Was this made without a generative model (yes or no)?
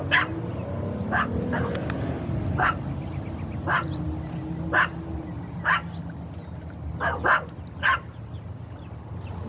yes